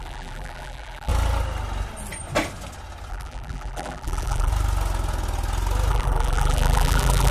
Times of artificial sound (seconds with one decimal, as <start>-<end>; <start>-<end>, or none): 0.0-1.1; 3.1-4.5; 5.9-7.3